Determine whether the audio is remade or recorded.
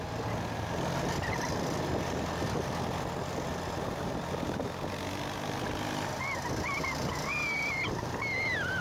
recorded